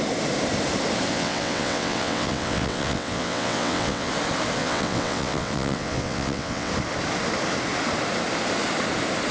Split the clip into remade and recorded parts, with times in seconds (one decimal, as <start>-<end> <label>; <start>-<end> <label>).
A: 0.0-1.1 recorded; 1.1-4.1 remade; 4.1-4.6 recorded; 4.6-6.7 remade; 6.7-9.3 recorded